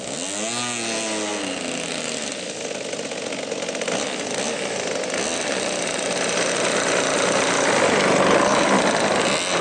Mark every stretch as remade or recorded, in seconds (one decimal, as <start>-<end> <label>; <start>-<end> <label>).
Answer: 0.0-9.6 recorded